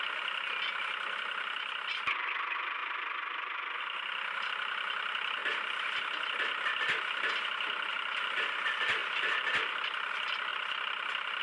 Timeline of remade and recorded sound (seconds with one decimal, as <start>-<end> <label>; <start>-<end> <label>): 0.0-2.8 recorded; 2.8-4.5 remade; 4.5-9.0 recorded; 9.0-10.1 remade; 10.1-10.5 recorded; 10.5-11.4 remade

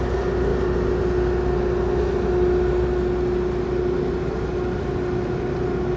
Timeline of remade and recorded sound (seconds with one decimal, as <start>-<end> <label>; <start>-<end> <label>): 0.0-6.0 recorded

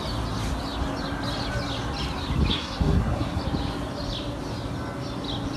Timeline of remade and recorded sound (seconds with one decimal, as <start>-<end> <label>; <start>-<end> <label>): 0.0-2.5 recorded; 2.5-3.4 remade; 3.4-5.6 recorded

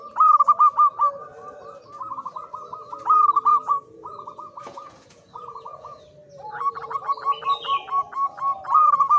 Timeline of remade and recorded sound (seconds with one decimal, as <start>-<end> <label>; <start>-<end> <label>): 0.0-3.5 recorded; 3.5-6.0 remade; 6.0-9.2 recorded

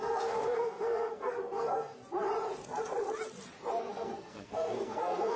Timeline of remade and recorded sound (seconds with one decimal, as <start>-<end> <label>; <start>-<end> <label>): 0.0-2.0 remade; 2.0-3.8 recorded; 3.8-5.4 remade

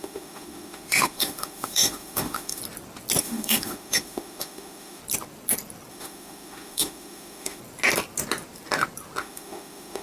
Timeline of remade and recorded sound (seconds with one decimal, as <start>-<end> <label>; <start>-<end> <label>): 0.0-2.6 remade; 2.6-3.2 recorded; 3.2-5.0 remade; 5.0-5.9 recorded; 5.9-7.6 remade; 7.6-9.2 recorded; 9.2-10.0 remade

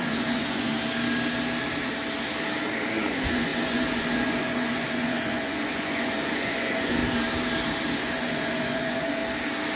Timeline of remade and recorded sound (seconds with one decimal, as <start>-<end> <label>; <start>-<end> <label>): 0.0-0.7 remade; 0.7-3.1 recorded; 3.1-7.0 remade; 7.0-8.0 recorded; 8.0-9.2 remade; 9.2-9.8 recorded

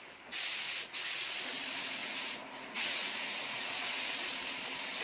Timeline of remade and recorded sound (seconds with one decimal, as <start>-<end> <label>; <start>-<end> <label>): 0.0-0.6 recorded; 0.6-1.6 remade; 1.6-2.0 recorded; 2.0-4.3 remade; 4.3-5.0 recorded